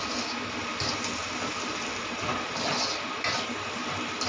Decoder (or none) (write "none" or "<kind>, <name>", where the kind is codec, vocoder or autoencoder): none